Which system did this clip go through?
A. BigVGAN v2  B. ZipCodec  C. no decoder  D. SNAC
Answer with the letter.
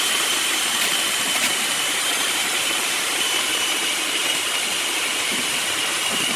A